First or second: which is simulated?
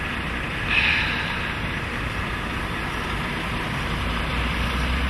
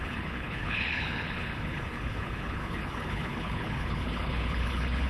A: second